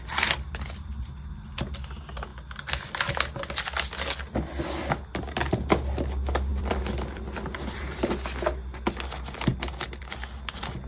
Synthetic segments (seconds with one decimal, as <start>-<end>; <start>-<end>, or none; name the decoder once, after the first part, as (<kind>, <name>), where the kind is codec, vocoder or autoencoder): 6.5-8.1 (vocoder, BigVGAN v2)